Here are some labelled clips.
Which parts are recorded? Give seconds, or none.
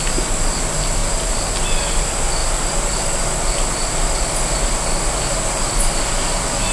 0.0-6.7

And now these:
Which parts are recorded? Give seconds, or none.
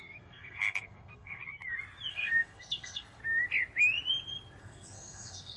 1.4-2.1; 3.2-4.6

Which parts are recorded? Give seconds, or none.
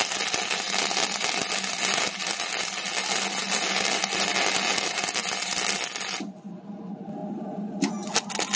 0.0-8.6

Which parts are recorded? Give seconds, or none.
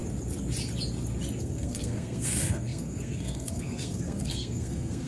0.0-1.4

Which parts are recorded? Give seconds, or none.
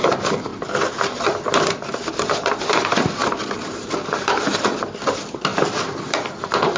0.5-1.2; 5.5-6.3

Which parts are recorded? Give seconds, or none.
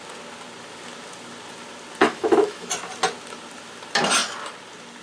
0.0-2.0; 2.7-5.0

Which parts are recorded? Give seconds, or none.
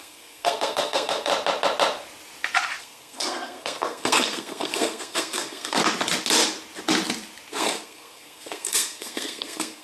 1.3-2.8; 5.8-7.5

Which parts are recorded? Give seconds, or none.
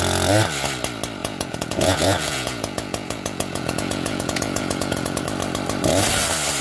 0.0-1.2; 5.2-6.6